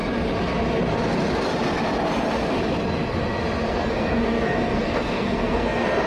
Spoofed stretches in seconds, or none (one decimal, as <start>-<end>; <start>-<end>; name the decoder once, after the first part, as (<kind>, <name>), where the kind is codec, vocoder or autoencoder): 3.7-6.1 (codec, SNAC)